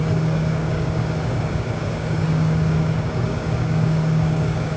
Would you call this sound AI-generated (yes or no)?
yes